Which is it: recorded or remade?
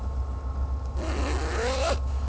recorded